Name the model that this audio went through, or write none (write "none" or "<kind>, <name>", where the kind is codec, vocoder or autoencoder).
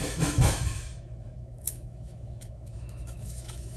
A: autoencoder, DAC-VAE